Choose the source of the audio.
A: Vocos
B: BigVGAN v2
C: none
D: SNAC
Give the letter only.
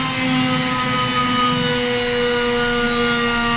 C